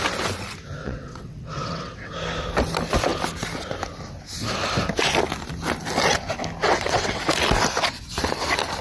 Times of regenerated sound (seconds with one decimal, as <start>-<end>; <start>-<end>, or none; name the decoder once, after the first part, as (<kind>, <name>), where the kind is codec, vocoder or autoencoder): 0.8-2.1 (vocoder, WaveNeXt); 6.6-7.2